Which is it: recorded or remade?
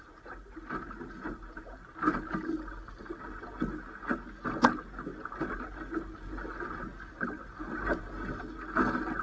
recorded